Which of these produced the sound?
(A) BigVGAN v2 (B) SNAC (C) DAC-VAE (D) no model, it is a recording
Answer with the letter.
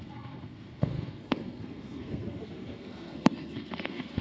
B